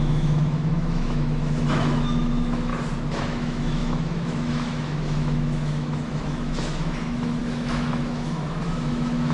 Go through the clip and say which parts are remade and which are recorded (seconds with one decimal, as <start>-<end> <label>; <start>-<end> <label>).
0.0-2.7 remade; 2.7-3.2 recorded; 3.2-9.3 remade